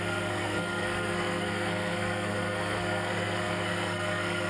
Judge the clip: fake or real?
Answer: fake